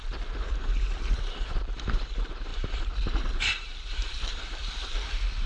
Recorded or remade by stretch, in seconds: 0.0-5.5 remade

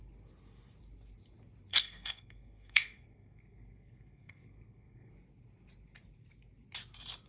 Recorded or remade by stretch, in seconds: 0.0-1.7 recorded; 1.7-5.1 remade; 5.1-7.3 recorded

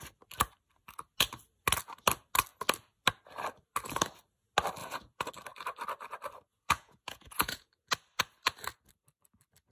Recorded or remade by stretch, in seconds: 0.0-4.8 recorded; 4.8-5.3 remade; 5.3-6.5 recorded; 6.5-7.7 remade; 7.7-9.7 recorded

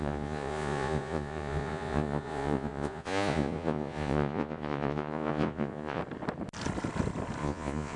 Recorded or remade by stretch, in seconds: 0.0-6.0 remade; 6.0-7.4 recorded; 7.4-8.0 remade